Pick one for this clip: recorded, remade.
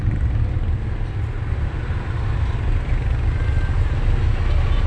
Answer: recorded